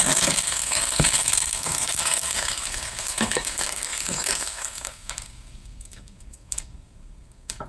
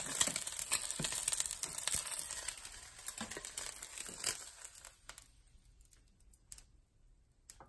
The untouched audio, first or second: second